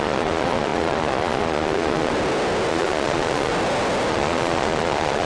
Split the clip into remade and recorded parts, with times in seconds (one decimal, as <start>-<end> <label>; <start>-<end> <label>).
0.0-2.1 remade; 2.1-2.7 recorded; 2.7-3.5 remade; 3.5-4.1 recorded; 4.1-5.3 remade

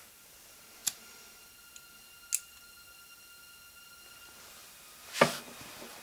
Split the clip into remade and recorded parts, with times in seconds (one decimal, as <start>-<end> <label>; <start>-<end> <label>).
0.0-6.0 recorded

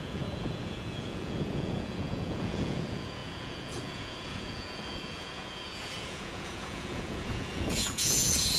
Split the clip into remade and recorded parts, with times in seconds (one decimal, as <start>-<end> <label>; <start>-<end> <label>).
0.0-8.6 remade

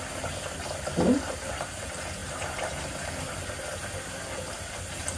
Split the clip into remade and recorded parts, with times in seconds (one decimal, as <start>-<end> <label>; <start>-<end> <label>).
0.0-5.2 recorded

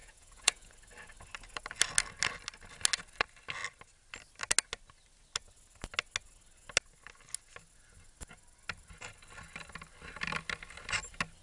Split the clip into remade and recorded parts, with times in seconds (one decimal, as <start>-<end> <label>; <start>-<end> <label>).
0.0-0.7 remade; 0.7-11.4 recorded

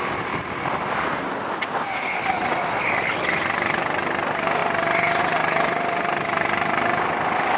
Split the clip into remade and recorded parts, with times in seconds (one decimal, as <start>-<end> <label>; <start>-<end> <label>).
0.0-7.6 recorded